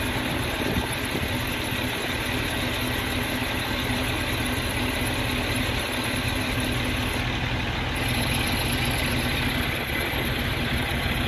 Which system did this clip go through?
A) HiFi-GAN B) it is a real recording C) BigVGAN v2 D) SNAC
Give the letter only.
B